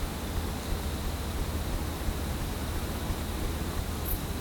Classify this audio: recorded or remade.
recorded